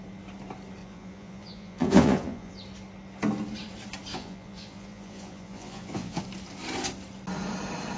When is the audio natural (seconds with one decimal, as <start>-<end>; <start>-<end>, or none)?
0.0-0.8; 2.5-4.1; 6.2-8.0